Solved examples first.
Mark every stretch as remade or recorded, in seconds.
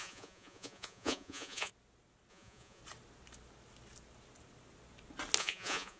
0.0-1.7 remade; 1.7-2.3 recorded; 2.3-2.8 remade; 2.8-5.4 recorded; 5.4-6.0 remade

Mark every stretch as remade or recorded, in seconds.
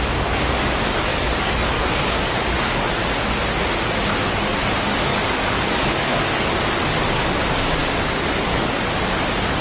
0.0-1.1 recorded; 1.1-2.3 remade; 2.3-5.1 recorded; 5.1-6.5 remade; 6.5-7.8 recorded; 7.8-8.7 remade; 8.7-9.6 recorded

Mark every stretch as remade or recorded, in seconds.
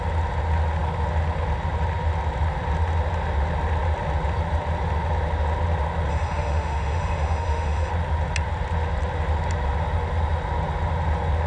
0.0-6.1 recorded; 6.1-7.9 remade; 7.9-11.5 recorded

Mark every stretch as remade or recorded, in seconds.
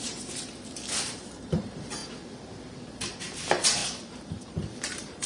0.0-2.0 remade; 2.0-3.2 recorded; 3.2-3.8 remade; 3.8-4.5 recorded; 4.5-5.3 remade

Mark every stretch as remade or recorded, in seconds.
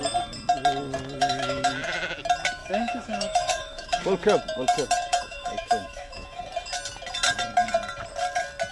0.0-1.2 recorded; 1.2-1.7 remade; 1.7-2.6 recorded; 2.6-4.0 remade; 4.0-5.1 recorded; 5.1-6.4 remade; 6.4-8.7 recorded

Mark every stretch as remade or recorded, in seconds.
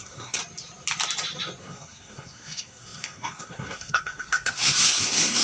0.0-0.4 remade; 0.4-1.6 recorded; 1.6-5.4 remade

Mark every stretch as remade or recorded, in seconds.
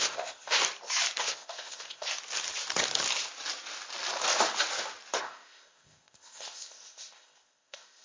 0.0-0.6 remade; 0.6-1.2 recorded; 1.2-2.1 remade; 2.1-5.2 recorded; 5.2-8.0 remade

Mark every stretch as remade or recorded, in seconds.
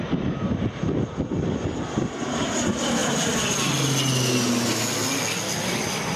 0.0-6.2 recorded